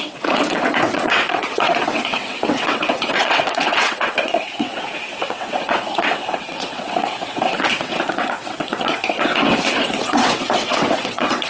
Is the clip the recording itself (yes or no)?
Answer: no